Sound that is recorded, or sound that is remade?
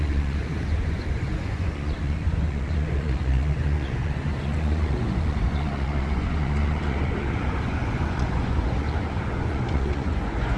remade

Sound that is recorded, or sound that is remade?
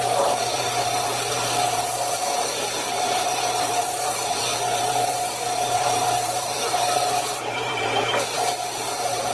remade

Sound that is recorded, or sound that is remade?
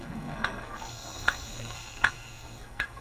remade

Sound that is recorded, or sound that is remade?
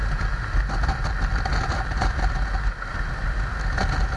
recorded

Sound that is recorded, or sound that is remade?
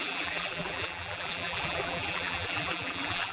remade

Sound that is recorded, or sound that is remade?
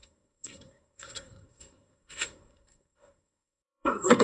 remade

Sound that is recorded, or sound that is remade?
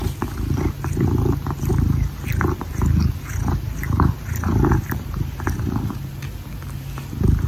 recorded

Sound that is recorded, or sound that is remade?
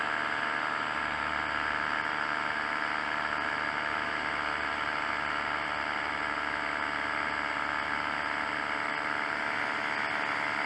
recorded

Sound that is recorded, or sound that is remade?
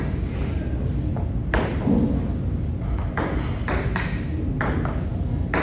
recorded